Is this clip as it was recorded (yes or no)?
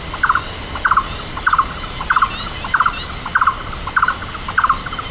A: yes